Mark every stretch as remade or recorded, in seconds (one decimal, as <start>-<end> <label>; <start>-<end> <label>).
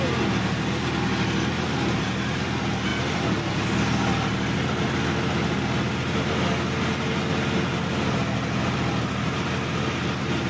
0.0-10.5 recorded